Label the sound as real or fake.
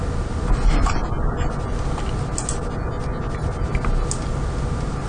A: real